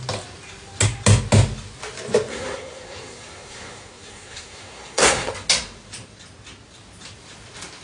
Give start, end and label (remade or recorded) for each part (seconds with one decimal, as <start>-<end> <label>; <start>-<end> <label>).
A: 0.0-2.3 recorded; 2.3-5.3 remade; 5.3-7.8 recorded